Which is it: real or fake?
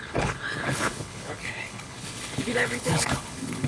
fake